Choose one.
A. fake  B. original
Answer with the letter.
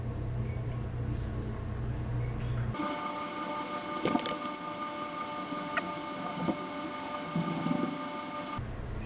B